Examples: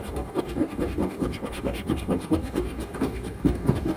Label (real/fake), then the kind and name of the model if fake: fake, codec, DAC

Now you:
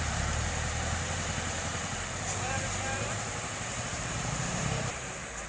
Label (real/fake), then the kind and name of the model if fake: fake, vocoder, BigVGAN v2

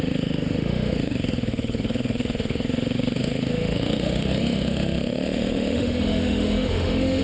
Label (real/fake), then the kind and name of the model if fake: fake, autoencoder, DAC-VAE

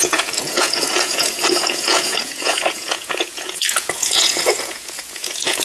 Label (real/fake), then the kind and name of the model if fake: fake, vocoder, Vocos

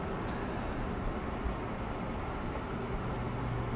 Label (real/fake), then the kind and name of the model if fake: real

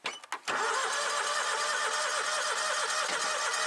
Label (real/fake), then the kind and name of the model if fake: real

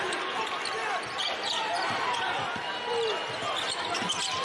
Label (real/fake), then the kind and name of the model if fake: real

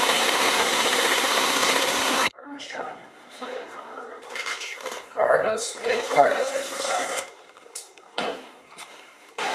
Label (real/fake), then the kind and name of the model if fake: fake, codec, SNAC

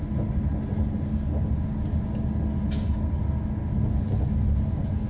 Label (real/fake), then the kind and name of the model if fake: real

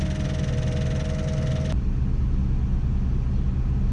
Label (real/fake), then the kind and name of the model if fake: real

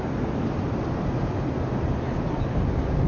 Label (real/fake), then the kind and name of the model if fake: real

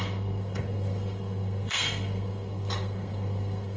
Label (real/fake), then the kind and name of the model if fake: fake, codec, SNAC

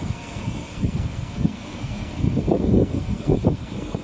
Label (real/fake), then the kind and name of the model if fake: fake, codec, SNAC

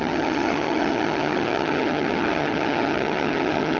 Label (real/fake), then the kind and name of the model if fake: fake, vocoder, HiFi-GAN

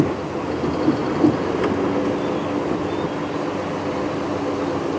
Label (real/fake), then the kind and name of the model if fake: real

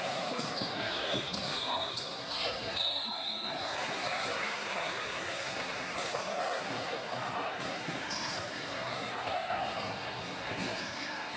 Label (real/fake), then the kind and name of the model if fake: fake, codec, SNAC